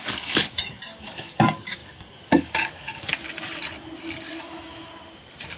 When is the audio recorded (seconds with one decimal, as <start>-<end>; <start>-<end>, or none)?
3.1-5.6